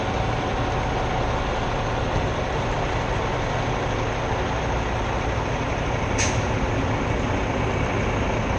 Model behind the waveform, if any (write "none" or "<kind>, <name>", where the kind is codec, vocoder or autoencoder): none